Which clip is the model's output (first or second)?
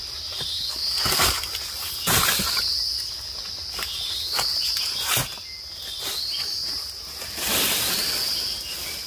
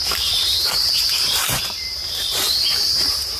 second